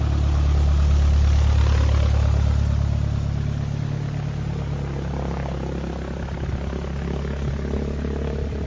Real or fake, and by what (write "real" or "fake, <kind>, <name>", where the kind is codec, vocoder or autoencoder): real